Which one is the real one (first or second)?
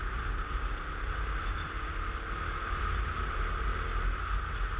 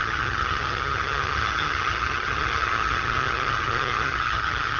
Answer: first